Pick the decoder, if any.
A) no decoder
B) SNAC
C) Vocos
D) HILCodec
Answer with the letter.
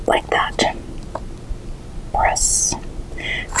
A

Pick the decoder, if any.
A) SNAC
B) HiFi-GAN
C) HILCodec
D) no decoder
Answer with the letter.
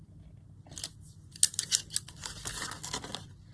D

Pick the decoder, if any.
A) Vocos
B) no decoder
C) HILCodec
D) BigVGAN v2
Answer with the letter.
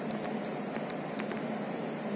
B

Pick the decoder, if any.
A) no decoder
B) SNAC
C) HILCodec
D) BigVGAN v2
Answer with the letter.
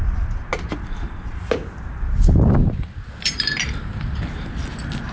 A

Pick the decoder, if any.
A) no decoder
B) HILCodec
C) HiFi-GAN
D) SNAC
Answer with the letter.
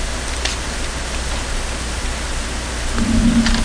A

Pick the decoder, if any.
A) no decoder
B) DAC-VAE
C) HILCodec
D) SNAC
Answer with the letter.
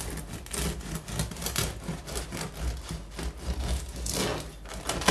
A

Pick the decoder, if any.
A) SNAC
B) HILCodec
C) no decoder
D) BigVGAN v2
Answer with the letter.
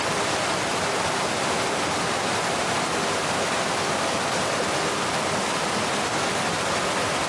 C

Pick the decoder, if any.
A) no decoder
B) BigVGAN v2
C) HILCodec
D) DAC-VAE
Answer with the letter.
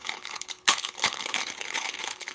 C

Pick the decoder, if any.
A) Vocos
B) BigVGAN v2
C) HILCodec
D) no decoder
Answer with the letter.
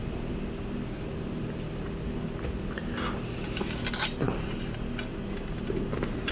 D